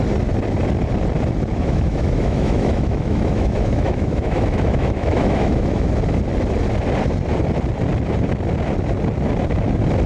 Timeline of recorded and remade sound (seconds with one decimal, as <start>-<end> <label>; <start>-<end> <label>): 0.0-1.5 recorded; 1.5-5.9 remade; 5.9-10.1 recorded